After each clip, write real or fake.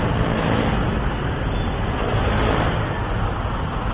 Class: real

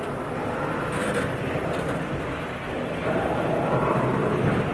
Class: fake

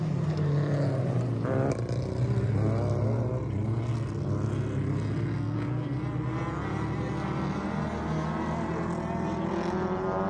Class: real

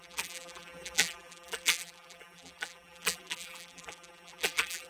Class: fake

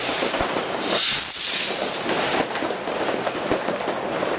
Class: fake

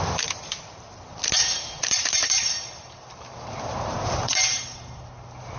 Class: fake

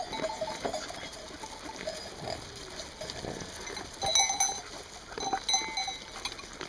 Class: real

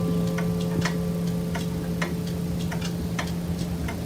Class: real